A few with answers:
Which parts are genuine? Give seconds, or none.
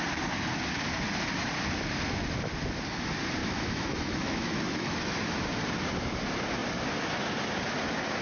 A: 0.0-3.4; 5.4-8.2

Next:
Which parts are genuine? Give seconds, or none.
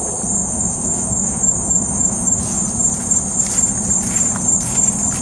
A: 0.0-0.4; 2.6-5.2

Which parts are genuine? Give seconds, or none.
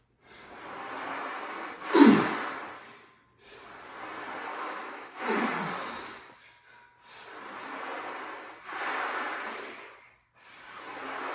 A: 0.0-4.5; 5.2-11.3